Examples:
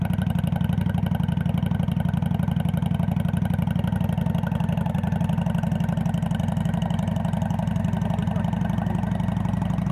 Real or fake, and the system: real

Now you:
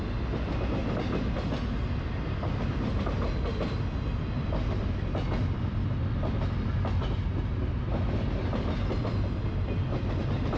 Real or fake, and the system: real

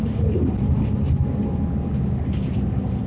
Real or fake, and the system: real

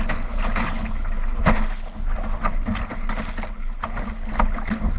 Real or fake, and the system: real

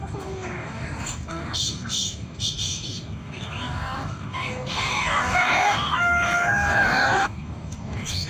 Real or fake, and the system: fake, codec, DAC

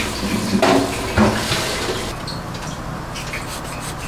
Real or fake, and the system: real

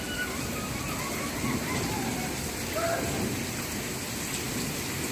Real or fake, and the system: real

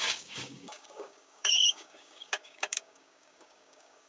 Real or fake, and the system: fake, codec, DAC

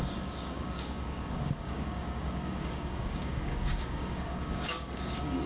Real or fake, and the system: fake, codec, DAC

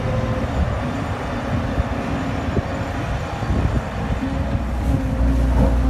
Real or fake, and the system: real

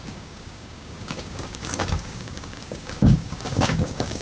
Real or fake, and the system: fake, codec, DAC